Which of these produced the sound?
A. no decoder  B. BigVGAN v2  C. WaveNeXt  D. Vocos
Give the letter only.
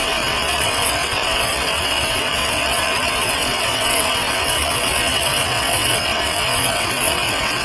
C